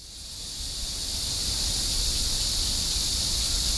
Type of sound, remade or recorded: recorded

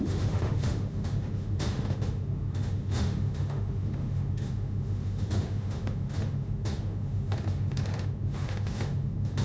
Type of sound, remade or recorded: remade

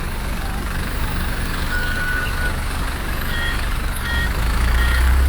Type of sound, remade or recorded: remade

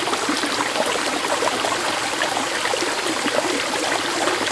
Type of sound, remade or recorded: recorded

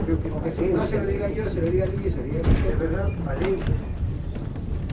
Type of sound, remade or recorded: remade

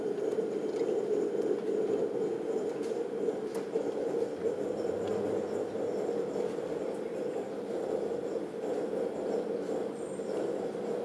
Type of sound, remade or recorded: recorded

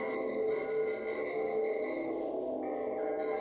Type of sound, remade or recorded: recorded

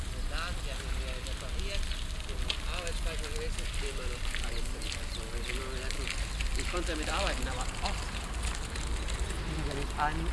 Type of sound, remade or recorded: recorded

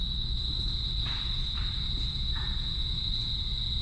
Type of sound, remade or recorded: remade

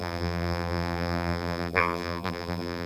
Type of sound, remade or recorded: remade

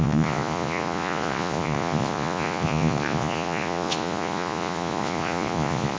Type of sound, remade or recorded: remade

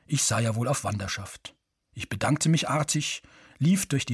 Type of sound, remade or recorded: recorded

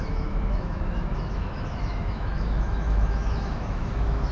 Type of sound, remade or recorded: remade